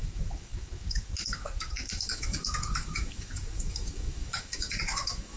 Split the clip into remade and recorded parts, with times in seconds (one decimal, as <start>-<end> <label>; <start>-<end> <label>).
0.0-5.4 remade